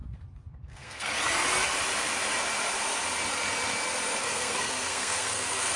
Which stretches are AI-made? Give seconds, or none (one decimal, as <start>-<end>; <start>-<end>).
0.6-1.1; 4.2-5.8